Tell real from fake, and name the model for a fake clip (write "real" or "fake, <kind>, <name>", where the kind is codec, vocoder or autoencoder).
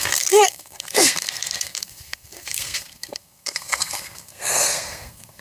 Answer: fake, codec, SNAC